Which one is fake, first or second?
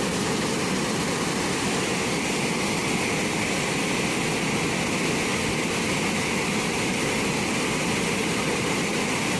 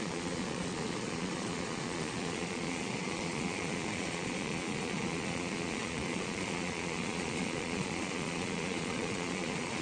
second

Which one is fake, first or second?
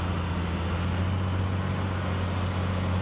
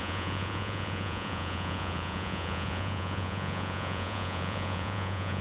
second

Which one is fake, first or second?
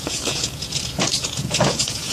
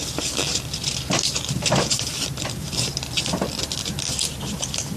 first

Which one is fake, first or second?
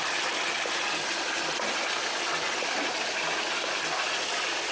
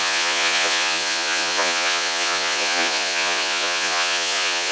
second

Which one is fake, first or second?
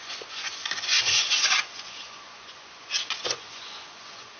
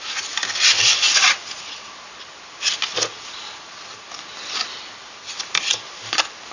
first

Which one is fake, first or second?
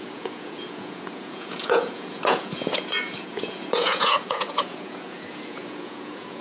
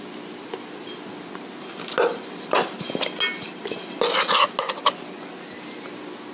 first